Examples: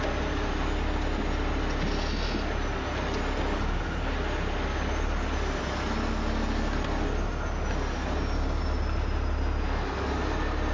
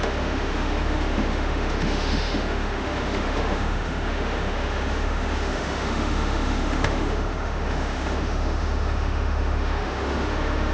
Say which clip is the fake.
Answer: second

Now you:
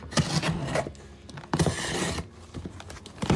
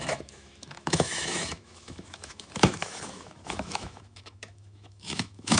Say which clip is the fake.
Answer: second